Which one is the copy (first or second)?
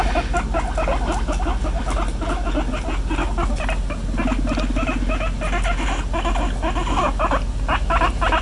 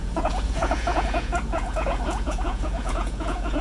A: second